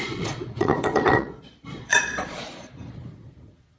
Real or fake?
fake